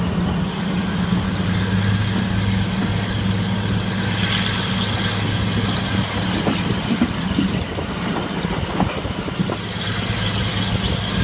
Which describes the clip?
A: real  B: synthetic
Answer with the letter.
A